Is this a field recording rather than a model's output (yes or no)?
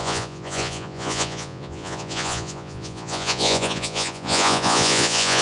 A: no